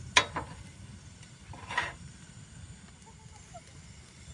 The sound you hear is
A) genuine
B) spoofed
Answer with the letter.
A